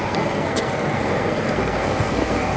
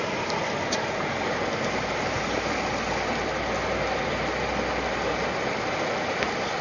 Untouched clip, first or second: second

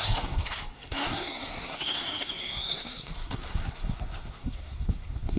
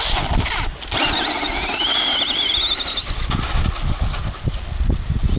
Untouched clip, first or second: second